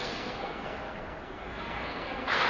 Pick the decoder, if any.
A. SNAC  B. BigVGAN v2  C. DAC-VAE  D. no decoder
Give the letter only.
A